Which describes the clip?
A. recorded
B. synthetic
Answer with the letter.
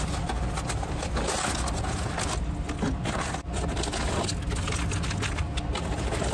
A